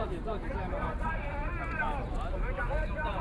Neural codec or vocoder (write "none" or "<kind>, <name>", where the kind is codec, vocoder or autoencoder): vocoder, BigVGAN v2